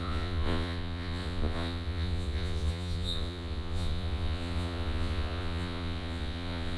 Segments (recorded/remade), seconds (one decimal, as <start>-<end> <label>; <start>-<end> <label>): 0.0-6.8 remade